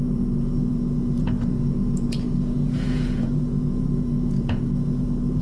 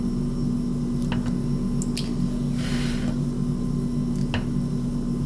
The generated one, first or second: first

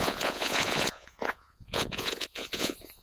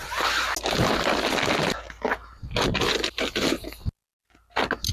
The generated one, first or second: first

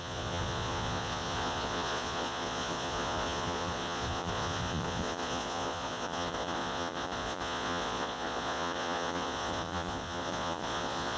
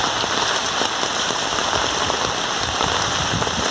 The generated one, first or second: first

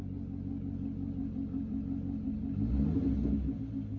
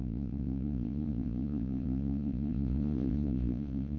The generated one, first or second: second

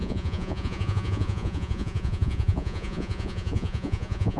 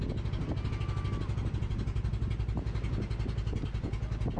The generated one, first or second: first